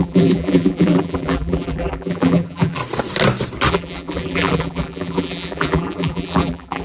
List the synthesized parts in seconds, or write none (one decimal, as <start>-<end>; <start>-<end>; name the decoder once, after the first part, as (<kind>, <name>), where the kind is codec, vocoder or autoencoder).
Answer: 0.0-2.8 (vocoder, BigVGAN v2); 3.7-6.8